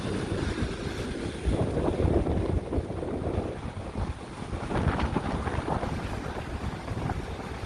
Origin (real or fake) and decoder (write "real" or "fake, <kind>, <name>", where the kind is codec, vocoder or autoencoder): real